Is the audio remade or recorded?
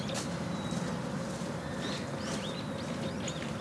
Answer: recorded